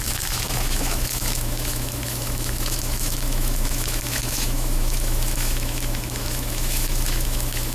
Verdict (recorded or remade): remade